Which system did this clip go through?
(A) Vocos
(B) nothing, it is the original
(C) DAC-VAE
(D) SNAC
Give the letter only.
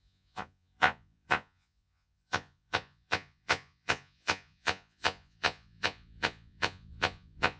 A